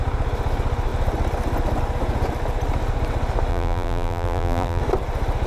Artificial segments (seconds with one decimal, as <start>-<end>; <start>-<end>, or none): 3.5-4.8